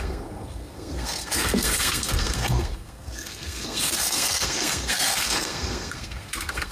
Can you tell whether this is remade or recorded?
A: remade